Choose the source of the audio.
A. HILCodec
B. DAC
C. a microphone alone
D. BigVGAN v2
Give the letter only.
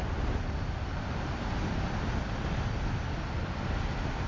C